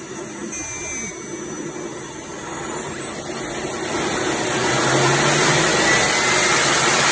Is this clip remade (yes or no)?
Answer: no